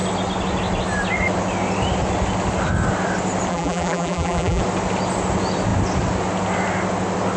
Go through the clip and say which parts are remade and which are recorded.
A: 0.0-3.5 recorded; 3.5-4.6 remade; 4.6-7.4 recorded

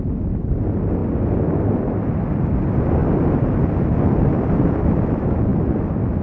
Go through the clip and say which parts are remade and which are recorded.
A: 0.0-6.2 recorded

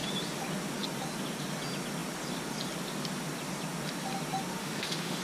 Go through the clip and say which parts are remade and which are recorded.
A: 0.0-4.6 recorded; 4.6-5.2 remade

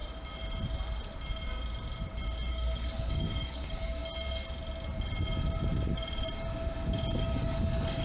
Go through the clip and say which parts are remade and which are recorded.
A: 0.0-2.5 recorded; 2.5-4.0 remade; 4.0-7.2 recorded; 7.2-8.0 remade

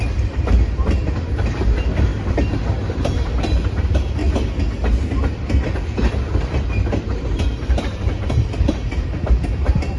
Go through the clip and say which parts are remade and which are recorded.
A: 0.0-4.2 remade; 4.2-6.1 recorded; 6.1-10.0 remade

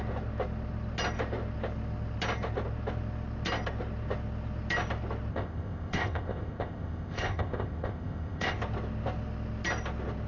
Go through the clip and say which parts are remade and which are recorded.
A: 0.0-5.3 recorded; 5.3-8.6 remade; 8.6-10.3 recorded

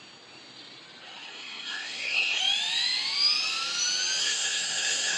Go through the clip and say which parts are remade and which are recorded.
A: 0.0-1.3 recorded; 1.3-2.4 remade; 2.4-4.2 recorded; 4.2-5.2 remade